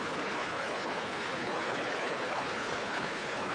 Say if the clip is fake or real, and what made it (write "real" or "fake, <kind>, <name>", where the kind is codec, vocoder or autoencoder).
fake, codec, HILCodec